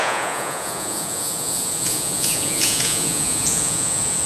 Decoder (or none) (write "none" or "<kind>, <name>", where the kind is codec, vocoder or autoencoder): vocoder, Vocos